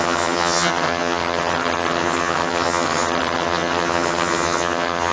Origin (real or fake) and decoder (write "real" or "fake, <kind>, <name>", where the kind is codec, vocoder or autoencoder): fake, vocoder, HiFi-GAN